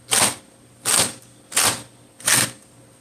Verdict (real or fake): real